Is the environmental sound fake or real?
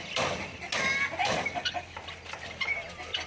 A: real